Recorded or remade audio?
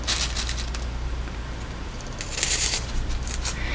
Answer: recorded